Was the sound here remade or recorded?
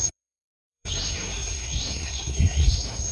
remade